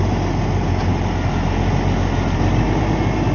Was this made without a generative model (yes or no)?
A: yes